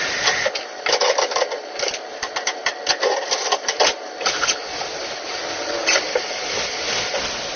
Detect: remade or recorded recorded